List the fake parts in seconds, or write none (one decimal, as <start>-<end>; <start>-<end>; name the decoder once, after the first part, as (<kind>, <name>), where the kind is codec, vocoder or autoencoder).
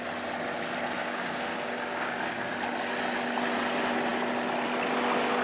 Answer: 1.0-2.5 (codec, DAC)